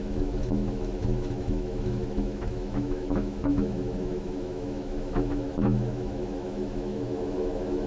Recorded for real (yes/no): no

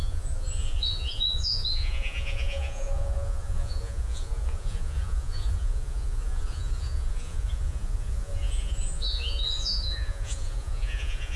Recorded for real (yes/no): no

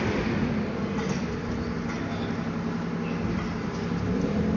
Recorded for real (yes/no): yes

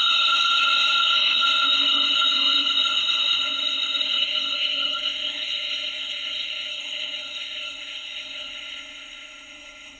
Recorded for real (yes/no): no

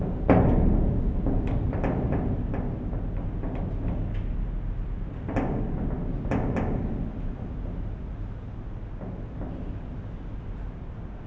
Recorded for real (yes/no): yes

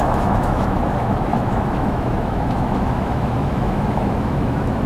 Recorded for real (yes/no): no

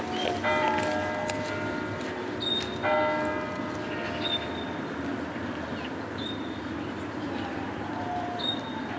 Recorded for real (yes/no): yes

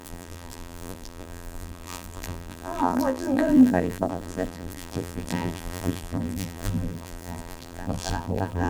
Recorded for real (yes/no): no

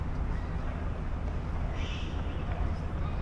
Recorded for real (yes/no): yes